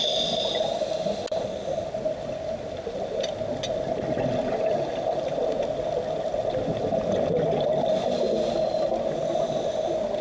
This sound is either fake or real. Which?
real